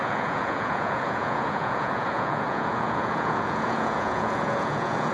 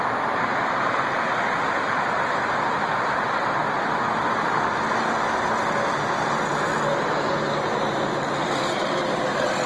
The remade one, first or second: first